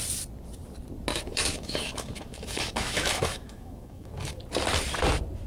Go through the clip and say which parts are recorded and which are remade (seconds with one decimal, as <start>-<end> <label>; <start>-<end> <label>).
0.0-1.1 recorded; 1.1-4.4 remade; 4.4-5.5 recorded